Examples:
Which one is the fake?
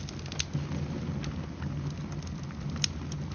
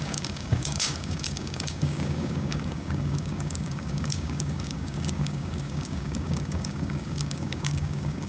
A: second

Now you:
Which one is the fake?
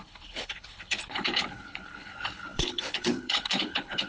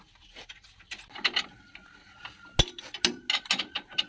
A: first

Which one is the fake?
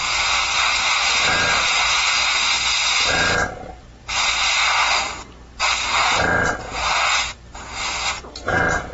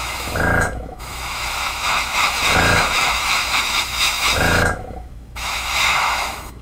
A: second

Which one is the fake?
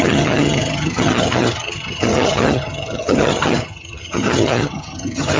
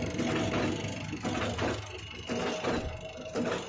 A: first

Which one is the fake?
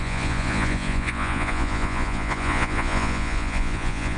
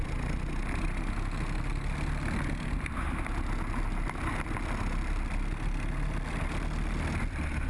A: first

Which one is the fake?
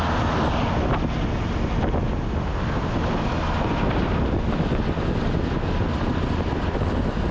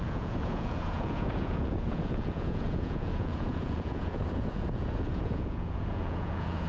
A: second